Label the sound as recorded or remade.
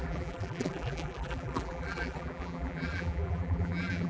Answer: remade